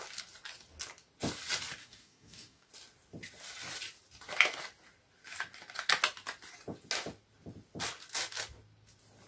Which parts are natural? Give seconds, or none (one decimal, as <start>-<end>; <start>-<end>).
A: 0.0-1.8; 2.7-9.3